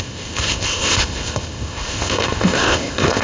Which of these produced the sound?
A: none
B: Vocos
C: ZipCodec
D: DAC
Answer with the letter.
C